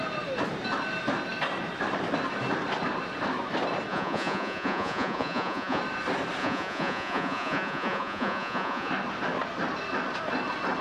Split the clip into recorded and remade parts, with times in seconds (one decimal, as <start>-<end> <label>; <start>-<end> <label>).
0.0-3.9 recorded; 3.9-5.8 remade; 5.8-6.4 recorded; 6.4-8.9 remade; 8.9-10.8 recorded